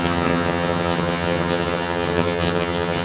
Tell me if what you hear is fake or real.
fake